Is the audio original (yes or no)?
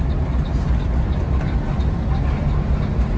yes